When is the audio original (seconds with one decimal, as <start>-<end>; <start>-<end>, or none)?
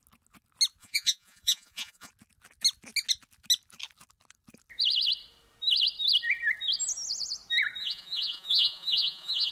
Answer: 0.0-0.8; 2.1-7.8